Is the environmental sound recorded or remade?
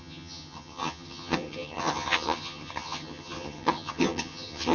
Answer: remade